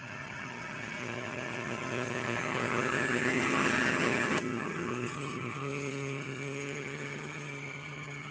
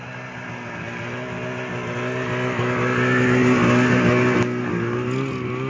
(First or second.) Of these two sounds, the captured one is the second